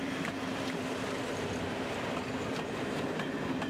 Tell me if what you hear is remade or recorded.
recorded